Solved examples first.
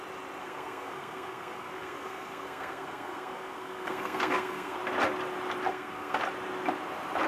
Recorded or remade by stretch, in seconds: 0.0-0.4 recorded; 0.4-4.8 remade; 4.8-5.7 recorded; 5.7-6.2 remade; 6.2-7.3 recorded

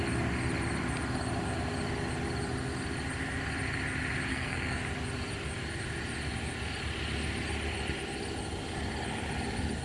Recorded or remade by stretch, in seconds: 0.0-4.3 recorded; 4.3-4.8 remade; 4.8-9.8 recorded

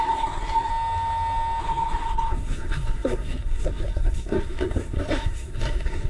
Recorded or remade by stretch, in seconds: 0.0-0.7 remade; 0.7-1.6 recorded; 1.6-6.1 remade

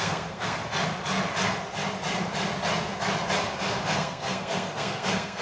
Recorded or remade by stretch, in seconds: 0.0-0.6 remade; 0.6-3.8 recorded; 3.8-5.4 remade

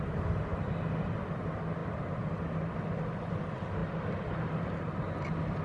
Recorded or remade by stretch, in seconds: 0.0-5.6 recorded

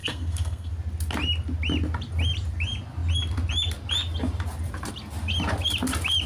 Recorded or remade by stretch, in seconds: 0.0-0.7 remade; 0.7-6.3 recorded